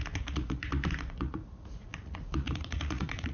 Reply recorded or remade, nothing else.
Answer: remade